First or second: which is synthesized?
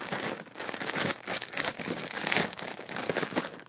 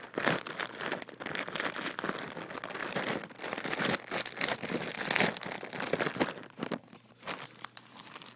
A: first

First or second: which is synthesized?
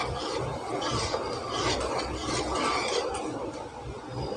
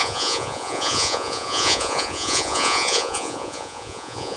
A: second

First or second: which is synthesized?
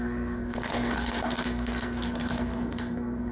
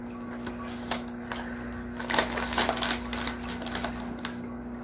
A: first